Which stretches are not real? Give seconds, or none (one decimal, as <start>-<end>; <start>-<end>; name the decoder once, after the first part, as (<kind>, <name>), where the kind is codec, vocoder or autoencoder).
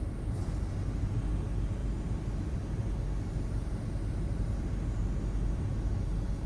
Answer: none